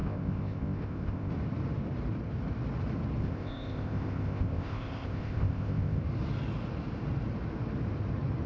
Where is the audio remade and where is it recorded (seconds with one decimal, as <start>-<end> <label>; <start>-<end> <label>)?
0.0-1.3 remade; 1.3-3.2 recorded; 3.2-6.0 remade; 6.0-8.5 recorded